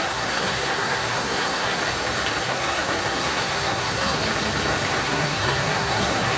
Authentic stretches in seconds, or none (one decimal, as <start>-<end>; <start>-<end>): 1.8-2.4; 4.2-5.0